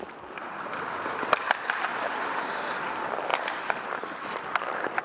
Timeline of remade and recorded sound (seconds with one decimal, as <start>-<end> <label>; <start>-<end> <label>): 0.0-3.3 recorded; 3.3-5.0 remade